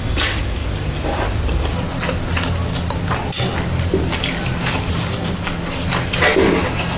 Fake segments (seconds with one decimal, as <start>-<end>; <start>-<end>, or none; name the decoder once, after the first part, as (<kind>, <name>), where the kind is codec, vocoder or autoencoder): none